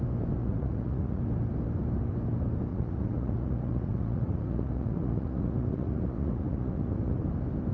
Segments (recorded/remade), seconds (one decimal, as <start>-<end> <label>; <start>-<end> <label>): 0.0-0.4 recorded; 0.4-1.2 remade; 1.2-2.7 recorded; 2.7-7.2 remade; 7.2-7.7 recorded